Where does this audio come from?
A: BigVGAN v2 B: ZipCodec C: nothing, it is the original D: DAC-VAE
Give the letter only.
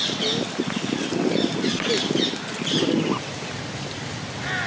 C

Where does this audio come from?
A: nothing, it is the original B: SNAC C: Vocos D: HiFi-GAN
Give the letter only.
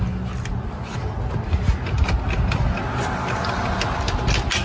A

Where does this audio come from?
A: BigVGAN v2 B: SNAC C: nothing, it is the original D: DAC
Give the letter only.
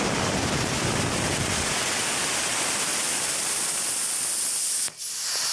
C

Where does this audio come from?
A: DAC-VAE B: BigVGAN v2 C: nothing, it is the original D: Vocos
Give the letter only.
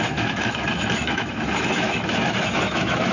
A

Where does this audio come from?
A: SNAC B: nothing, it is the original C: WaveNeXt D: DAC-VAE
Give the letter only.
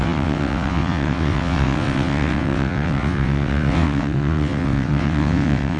C